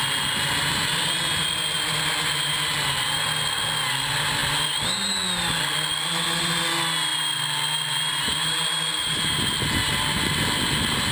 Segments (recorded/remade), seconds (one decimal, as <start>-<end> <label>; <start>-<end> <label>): 0.0-11.1 recorded